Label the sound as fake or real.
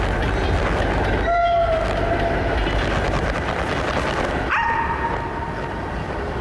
real